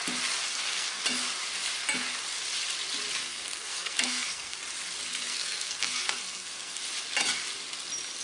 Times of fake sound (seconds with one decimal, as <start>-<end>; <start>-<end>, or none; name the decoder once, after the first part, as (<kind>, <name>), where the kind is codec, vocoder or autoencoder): 0.5-1.0 (codec, SNAC); 3.2-4.6; 5.1-6.8